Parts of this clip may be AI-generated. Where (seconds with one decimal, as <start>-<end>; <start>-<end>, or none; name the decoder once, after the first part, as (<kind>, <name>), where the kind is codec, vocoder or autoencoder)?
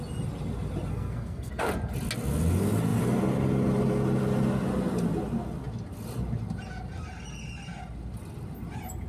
0.9-1.7 (codec, SNAC)